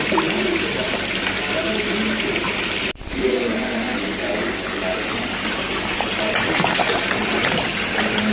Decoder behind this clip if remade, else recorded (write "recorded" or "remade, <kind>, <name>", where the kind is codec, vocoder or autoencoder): recorded